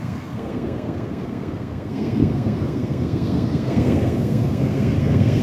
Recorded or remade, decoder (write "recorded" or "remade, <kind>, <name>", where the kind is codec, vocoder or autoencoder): remade, codec, SNAC